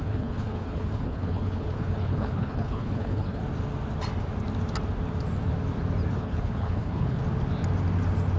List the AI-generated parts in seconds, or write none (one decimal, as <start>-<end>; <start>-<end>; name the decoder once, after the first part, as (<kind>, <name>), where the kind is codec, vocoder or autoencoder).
0.0-3.4 (codec, HILCodec); 6.1-7.2

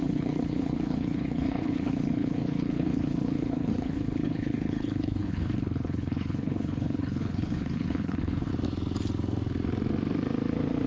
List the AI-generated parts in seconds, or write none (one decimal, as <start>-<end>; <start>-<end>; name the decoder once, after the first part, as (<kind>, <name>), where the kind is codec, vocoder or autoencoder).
0.0-8.5 (codec, HILCodec)

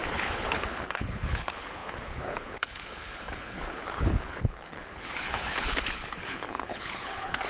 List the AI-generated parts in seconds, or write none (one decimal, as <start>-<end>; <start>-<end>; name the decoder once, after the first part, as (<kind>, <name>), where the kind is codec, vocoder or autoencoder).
0.0-7.5 (codec, HILCodec)

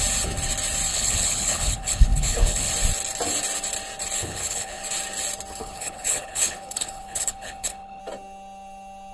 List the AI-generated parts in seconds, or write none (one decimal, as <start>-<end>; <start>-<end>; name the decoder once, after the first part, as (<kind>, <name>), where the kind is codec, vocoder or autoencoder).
0.9-2.7 (codec, HILCodec); 4.2-4.8; 5.6-8.0

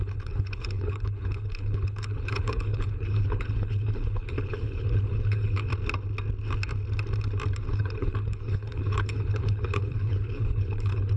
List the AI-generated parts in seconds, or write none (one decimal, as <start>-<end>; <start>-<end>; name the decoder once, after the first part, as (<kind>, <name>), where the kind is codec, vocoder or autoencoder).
0.0-5.7 (codec, HILCodec); 7.7-11.2

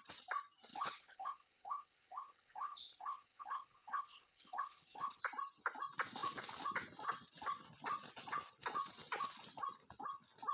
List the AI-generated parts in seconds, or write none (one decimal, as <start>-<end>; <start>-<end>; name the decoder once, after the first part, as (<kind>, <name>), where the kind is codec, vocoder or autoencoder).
0.7-5.2 (codec, HILCodec)